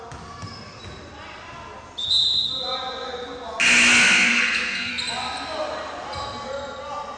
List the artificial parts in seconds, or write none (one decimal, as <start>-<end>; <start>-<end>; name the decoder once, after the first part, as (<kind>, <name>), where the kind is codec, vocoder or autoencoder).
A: 4.3-4.9 (codec, SNAC)